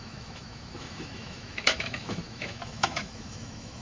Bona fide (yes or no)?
no